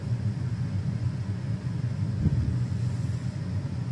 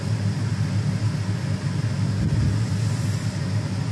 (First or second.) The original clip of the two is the second